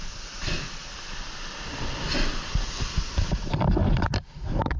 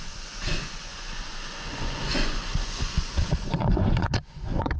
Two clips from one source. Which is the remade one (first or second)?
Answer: second